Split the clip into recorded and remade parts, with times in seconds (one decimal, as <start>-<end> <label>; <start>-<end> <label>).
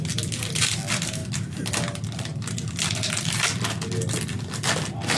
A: 0.0-5.2 recorded